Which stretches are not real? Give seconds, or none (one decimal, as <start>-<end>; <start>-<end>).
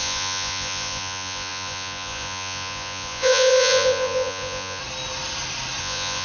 0.0-4.8; 5.8-6.2